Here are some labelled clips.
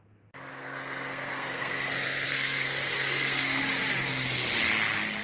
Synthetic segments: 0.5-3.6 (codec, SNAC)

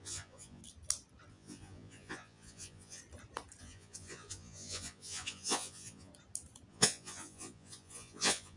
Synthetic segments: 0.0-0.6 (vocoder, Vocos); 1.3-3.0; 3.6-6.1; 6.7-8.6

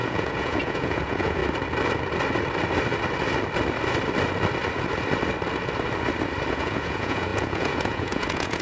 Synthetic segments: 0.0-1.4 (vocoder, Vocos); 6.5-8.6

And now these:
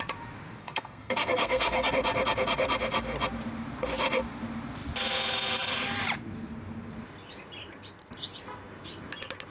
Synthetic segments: 0.6-1.9 (codec, SNAC)

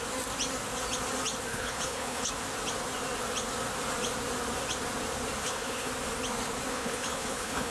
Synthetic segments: 1.5-2.3 (codec, HILCodec); 5.4-5.9; 6.7-7.7

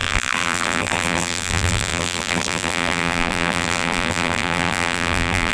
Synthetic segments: 0.0-5.5 (vocoder, BigVGAN v2)